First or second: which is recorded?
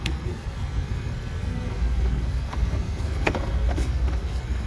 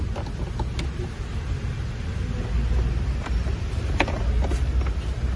second